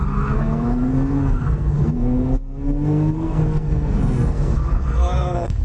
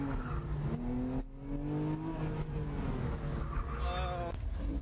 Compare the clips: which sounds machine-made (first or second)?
first